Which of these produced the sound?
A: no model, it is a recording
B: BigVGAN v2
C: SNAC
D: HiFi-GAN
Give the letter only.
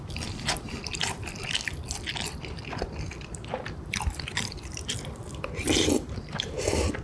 B